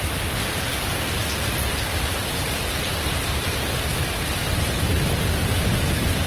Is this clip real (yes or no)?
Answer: yes